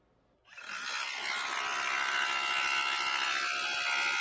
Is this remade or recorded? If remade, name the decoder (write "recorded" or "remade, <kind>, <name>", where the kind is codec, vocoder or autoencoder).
recorded